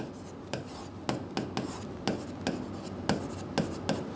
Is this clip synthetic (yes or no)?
no